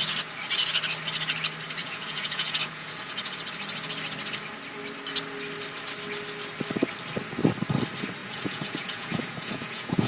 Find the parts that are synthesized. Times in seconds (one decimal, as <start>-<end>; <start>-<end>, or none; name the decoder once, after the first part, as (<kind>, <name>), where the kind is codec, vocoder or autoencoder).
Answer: 1.8-3.3 (vocoder, Vocos); 8.2-10.1